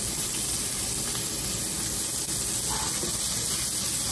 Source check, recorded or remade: recorded